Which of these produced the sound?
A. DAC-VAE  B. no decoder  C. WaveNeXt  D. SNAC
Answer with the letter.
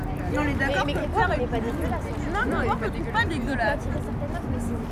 B